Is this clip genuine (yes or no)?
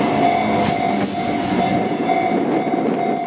yes